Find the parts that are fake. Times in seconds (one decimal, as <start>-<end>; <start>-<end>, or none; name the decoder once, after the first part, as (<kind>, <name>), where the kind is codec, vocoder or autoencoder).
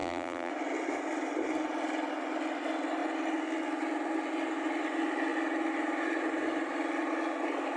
0.0-0.5 (vocoder, BigVGAN v2)